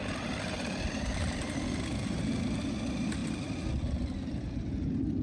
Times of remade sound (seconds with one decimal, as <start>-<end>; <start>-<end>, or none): none